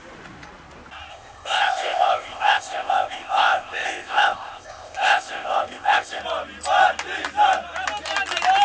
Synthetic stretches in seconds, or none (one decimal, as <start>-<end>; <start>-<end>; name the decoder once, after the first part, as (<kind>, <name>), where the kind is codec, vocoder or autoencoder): 1.1-6.2 (codec, ZipCodec)